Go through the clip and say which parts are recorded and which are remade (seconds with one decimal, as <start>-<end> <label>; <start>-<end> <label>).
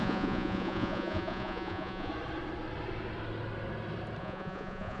0.0-2.1 remade; 2.1-4.2 recorded; 4.2-5.0 remade